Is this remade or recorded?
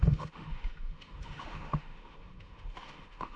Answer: remade